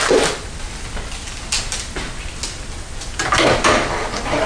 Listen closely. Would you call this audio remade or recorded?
recorded